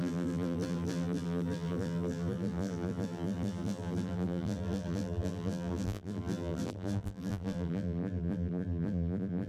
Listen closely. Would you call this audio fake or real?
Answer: fake